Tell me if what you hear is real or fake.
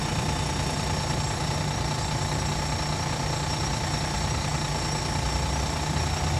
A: real